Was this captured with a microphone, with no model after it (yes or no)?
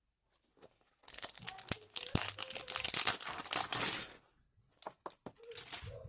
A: yes